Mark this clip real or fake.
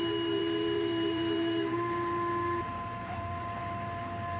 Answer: fake